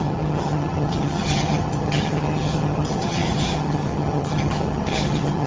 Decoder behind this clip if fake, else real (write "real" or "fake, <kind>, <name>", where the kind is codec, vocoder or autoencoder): fake, vocoder, HiFi-GAN